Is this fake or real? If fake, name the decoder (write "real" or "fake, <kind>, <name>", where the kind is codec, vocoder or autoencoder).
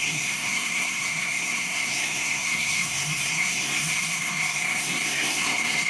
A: fake, codec, SNAC